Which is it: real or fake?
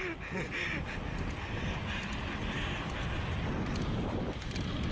real